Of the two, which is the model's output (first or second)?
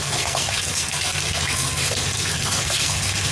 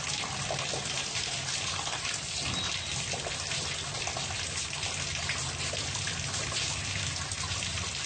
first